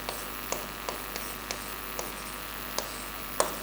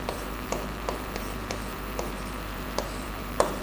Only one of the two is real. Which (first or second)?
first